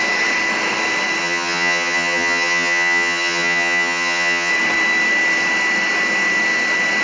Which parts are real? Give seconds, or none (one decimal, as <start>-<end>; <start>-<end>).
0.0-1.2; 4.5-7.0